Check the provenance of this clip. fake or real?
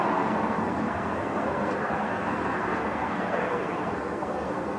fake